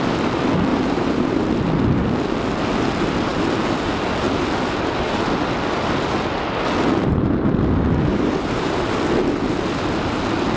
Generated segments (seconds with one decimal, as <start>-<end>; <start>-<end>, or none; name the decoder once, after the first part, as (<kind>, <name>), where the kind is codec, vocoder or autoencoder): 0.7-1.4 (vocoder, BigVGAN v2); 8.1-8.8